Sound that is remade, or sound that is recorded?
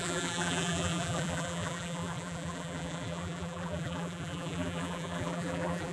remade